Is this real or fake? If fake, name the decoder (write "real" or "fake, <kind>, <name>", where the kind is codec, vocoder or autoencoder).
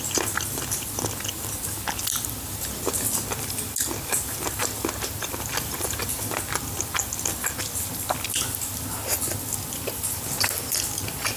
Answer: real